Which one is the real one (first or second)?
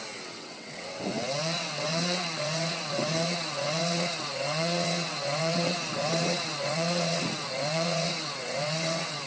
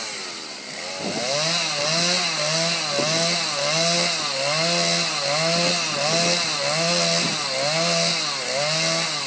second